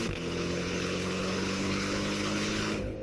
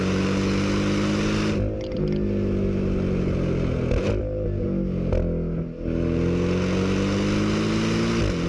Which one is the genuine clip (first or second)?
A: second